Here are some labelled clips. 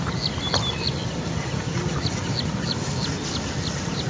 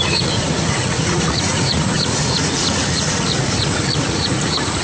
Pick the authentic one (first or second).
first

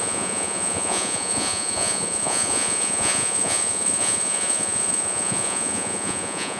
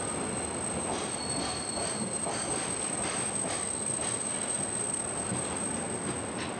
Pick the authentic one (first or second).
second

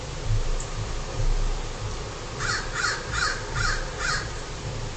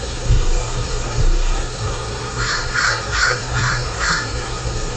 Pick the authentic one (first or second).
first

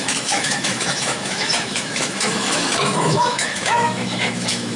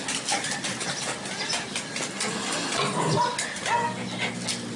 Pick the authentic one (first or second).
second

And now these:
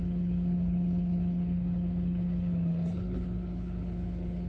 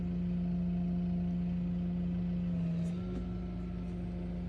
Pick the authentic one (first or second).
second